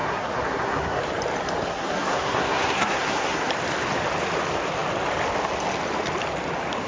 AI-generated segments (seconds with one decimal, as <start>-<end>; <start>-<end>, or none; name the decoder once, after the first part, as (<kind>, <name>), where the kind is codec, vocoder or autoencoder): 0.0-1.0 (codec, SNAC); 1.7-3.5